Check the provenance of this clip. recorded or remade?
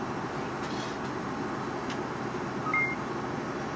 recorded